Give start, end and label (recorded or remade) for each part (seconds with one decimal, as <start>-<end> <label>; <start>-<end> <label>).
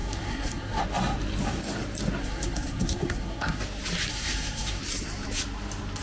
0.0-0.8 remade; 0.8-2.2 recorded; 2.2-3.6 remade; 3.6-4.1 recorded; 4.1-4.8 remade; 4.8-6.0 recorded